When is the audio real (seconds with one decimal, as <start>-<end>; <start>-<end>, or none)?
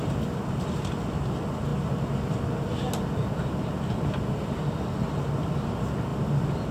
0.0-6.1